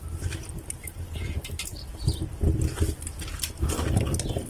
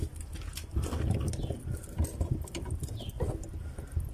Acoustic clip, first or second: first